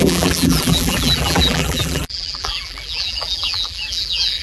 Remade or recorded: remade